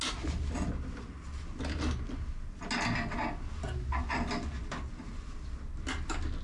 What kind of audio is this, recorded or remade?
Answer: recorded